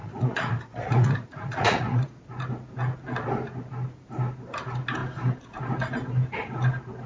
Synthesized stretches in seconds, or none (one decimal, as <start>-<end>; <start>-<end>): 0.0-2.2